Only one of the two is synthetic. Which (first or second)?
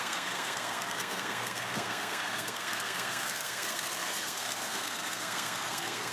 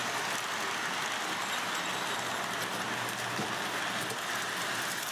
first